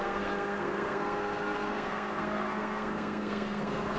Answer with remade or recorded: remade